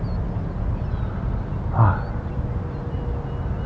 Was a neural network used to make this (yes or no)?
no